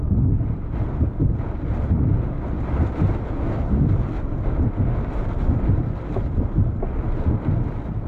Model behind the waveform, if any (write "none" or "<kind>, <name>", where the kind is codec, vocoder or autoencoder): none